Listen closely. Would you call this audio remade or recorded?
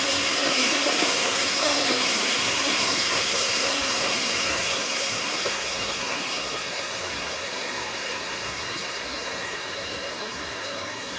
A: remade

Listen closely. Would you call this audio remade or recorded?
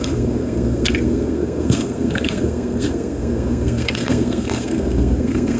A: remade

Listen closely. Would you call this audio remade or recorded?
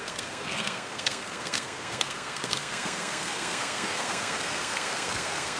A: remade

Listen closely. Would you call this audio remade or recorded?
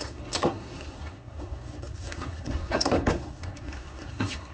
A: remade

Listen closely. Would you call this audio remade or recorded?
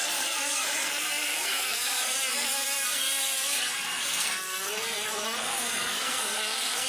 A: remade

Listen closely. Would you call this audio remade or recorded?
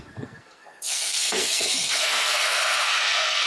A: remade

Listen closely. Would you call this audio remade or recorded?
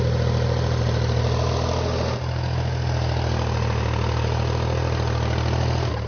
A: recorded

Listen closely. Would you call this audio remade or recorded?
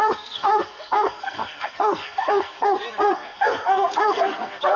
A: remade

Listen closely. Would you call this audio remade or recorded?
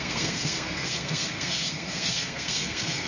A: remade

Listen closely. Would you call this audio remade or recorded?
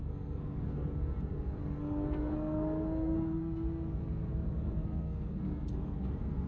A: remade